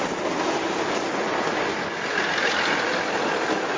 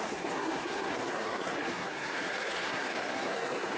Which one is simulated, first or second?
second